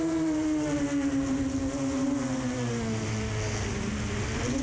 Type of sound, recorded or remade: recorded